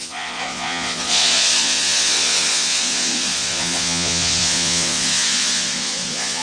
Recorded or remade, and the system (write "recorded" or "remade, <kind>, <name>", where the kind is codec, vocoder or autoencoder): remade, vocoder, Vocos